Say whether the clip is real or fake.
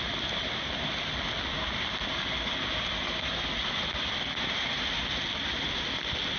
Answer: real